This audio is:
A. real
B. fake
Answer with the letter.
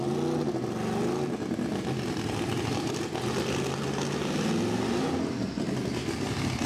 A